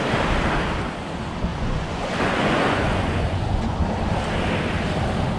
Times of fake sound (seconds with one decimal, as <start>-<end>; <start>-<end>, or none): 1.5-3.9